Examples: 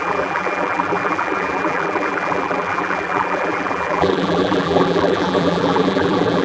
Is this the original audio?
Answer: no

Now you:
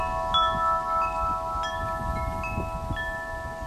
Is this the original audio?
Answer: yes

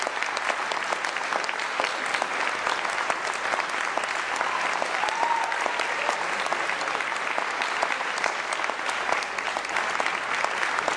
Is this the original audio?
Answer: yes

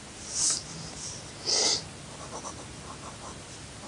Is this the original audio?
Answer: yes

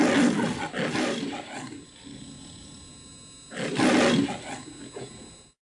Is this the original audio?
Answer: yes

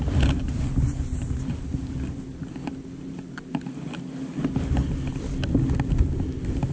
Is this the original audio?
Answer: yes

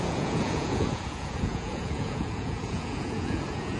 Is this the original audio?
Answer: no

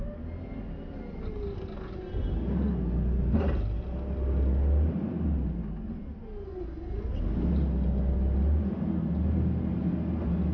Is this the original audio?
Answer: yes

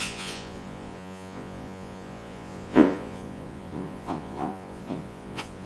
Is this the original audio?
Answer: no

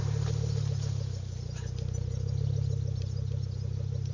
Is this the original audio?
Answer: yes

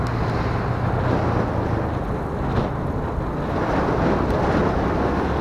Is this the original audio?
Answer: yes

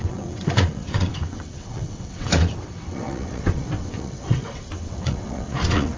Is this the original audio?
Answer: no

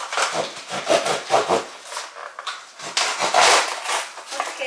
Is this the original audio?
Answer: yes